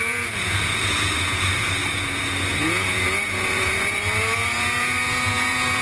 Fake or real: fake